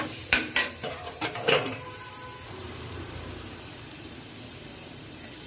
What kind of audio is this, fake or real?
fake